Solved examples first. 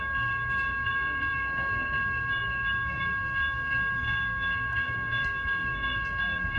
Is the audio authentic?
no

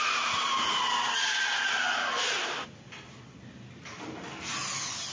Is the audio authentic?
yes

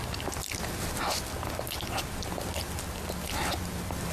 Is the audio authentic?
yes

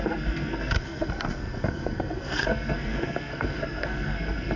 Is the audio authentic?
no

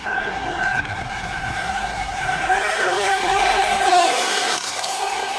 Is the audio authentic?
no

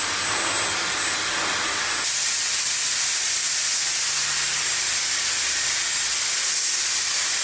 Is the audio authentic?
yes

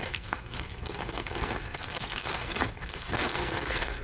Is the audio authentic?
no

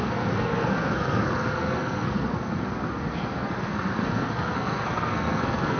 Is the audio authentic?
no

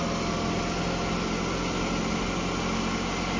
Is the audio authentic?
yes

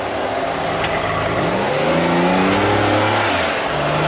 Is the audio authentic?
yes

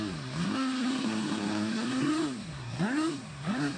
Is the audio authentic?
no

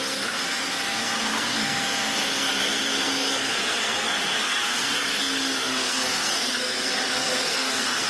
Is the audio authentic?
no